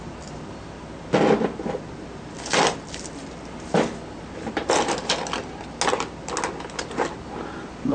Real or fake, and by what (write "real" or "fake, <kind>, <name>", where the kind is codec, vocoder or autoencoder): real